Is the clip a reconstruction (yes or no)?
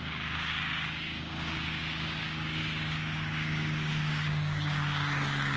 yes